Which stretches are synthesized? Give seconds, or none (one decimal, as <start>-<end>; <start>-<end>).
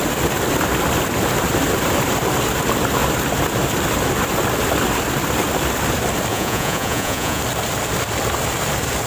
6.3-7.4